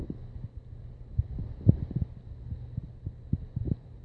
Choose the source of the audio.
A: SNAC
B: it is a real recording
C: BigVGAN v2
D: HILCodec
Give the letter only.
B